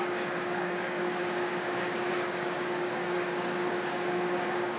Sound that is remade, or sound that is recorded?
remade